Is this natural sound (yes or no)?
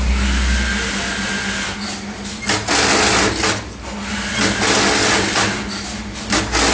yes